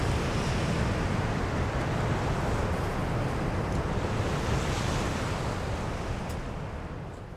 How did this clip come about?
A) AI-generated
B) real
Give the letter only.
B